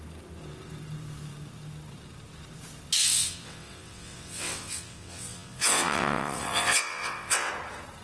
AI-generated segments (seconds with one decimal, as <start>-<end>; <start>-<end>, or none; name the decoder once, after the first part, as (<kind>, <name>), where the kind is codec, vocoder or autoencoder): 3.0-7.5 (vocoder, WaveNeXt)